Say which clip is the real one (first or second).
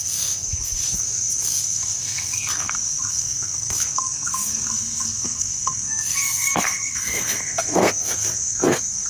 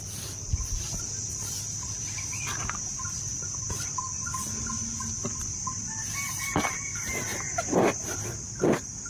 second